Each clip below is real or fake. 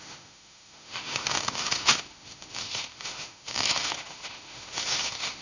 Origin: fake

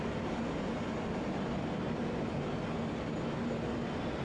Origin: real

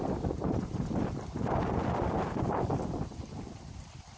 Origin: real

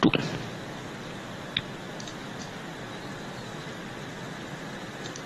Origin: real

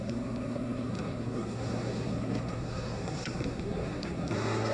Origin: fake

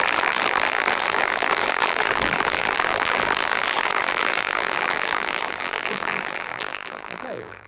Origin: fake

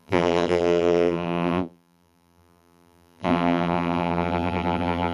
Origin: fake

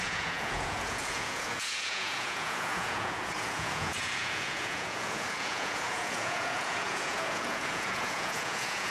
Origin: fake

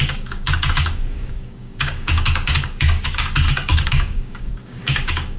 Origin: fake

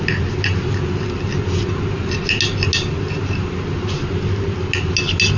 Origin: real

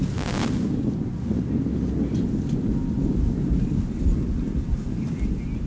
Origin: real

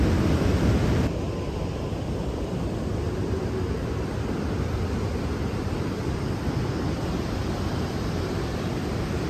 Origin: real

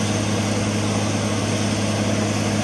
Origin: real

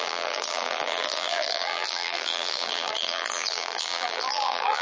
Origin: fake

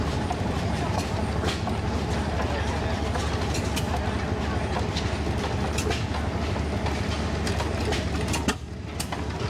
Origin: real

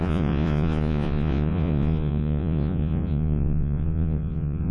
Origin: fake